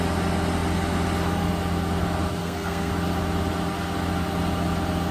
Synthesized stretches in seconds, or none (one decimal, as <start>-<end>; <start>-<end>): 2.4-2.9